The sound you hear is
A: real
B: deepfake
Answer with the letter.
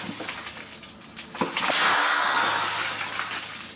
A